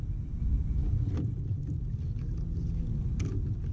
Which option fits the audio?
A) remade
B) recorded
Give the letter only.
B